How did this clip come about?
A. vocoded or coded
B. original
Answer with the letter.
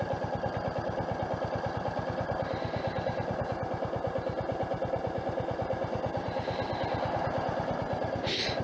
B